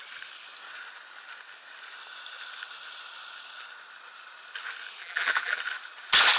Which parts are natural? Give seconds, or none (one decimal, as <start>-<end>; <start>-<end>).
0.0-5.0; 5.6-6.4